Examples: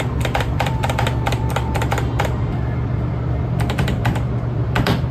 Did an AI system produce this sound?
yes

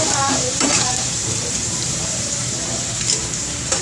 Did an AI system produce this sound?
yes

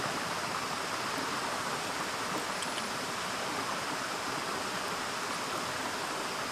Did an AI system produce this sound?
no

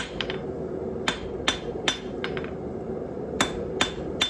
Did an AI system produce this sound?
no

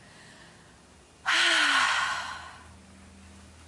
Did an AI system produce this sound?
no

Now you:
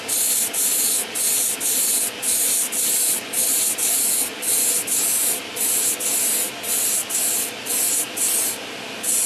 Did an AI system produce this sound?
no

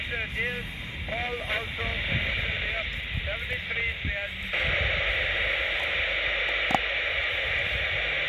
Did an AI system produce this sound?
no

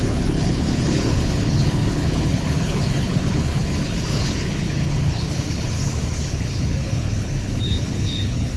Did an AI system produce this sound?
yes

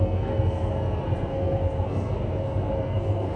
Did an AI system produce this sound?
yes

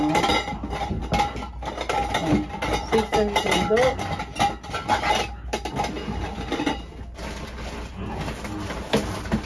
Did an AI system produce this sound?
no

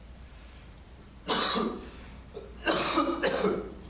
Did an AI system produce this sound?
yes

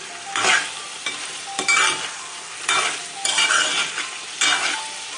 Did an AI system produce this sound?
no